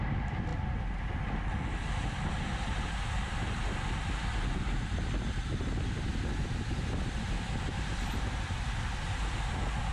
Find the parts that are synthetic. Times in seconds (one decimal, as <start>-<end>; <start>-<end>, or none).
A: none